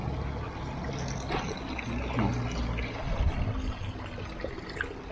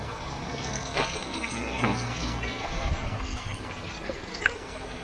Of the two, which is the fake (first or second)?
second